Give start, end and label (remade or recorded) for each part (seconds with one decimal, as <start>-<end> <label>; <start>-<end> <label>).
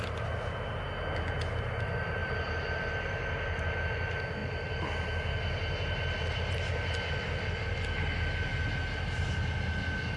0.0-2.2 recorded; 2.2-3.6 remade; 3.6-10.2 recorded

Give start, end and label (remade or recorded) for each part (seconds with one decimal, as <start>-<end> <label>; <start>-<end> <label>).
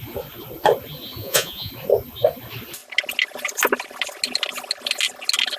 0.0-1.2 recorded; 1.2-1.7 remade; 1.7-5.6 recorded